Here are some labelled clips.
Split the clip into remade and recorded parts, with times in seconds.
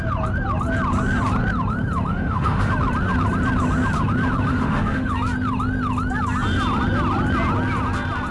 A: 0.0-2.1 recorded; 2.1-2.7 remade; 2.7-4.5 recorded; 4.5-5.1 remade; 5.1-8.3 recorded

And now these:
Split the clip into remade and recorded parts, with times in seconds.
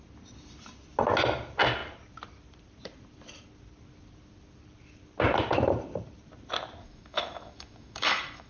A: 0.0-6.8 recorded; 6.8-8.5 remade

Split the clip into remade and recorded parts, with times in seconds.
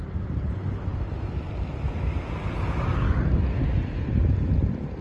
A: 0.0-5.0 recorded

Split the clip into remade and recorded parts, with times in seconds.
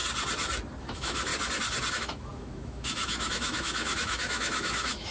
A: 0.0-0.8 recorded; 0.8-1.3 remade; 1.3-1.9 recorded; 1.9-5.1 remade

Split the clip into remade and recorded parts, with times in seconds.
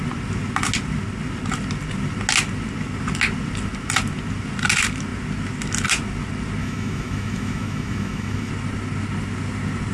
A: 0.0-6.6 recorded; 6.6-8.5 remade; 8.5-9.9 recorded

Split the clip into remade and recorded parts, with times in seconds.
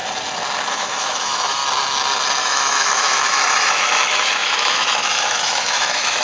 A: 0.0-0.7 recorded; 0.7-1.6 remade; 1.6-2.4 recorded; 2.4-6.2 remade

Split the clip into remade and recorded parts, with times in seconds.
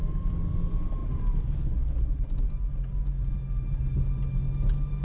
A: 0.0-5.0 recorded